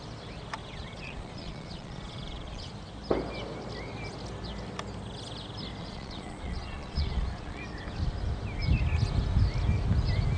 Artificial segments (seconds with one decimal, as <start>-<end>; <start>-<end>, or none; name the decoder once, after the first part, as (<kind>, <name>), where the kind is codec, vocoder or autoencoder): 0.6-2.7 (vocoder, Vocos); 5.8-7.6